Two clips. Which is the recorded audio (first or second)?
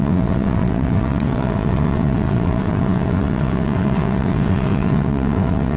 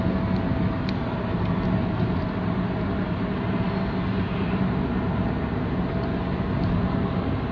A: second